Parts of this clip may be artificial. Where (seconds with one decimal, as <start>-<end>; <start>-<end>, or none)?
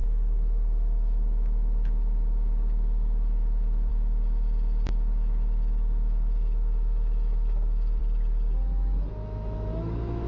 0.0-8.0; 9.1-10.3